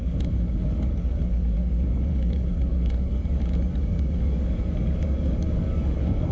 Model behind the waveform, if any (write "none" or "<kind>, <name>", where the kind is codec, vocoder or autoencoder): codec, DAC